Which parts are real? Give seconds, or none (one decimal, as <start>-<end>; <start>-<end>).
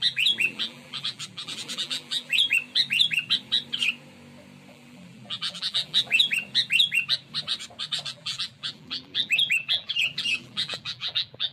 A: 2.5-4.7; 6.3-8.1